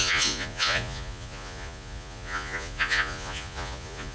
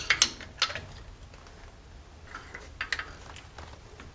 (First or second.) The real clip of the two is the second